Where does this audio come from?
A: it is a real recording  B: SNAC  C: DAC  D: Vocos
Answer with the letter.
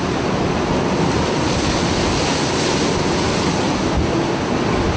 A